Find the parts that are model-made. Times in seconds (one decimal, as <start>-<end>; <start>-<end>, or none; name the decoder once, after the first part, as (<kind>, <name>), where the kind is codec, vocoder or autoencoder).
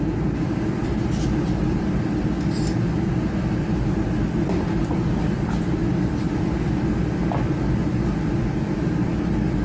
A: none